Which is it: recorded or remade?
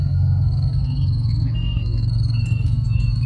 remade